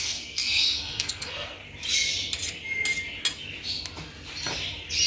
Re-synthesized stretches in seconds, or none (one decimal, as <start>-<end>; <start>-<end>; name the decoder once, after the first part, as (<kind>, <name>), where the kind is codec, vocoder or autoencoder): 0.0-1.6 (codec, SNAC)